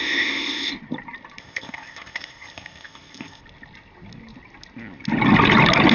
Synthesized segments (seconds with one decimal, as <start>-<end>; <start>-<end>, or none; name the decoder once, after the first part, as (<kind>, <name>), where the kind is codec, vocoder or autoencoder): 0.0-0.7 (codec, ZipCodec); 1.4-3.4